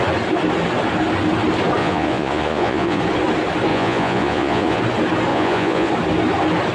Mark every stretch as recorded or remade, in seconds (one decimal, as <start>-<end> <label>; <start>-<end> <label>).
0.0-1.8 recorded; 1.8-3.0 remade; 3.0-3.7 recorded; 3.7-4.8 remade; 4.8-5.3 recorded; 5.3-5.9 remade; 5.9-6.7 recorded